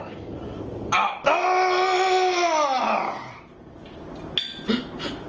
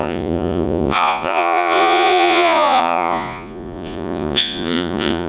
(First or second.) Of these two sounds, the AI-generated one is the second